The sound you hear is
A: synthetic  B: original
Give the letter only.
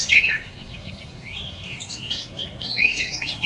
A